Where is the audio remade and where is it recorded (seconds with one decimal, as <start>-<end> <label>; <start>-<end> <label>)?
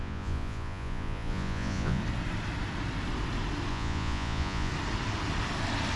0.0-2.0 remade; 2.0-3.7 recorded; 3.7-4.7 remade; 4.7-6.0 recorded